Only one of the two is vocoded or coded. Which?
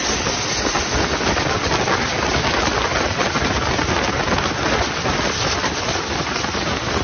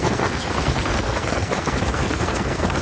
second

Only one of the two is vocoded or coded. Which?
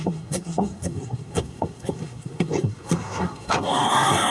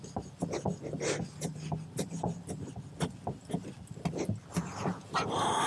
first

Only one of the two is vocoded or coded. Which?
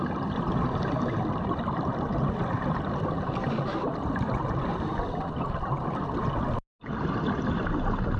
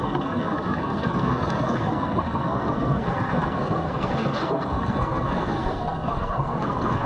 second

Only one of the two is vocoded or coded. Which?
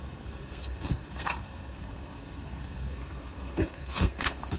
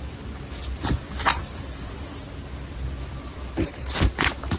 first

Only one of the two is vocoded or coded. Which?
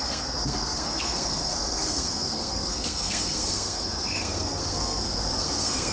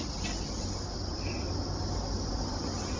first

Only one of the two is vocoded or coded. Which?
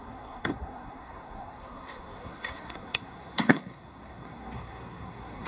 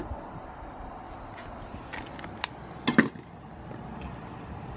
first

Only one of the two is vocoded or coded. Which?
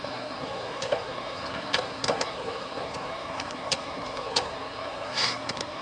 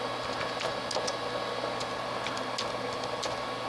first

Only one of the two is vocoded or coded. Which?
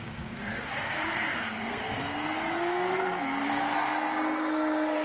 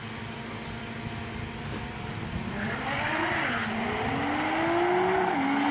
first